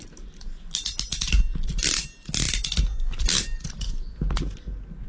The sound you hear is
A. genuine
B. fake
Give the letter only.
A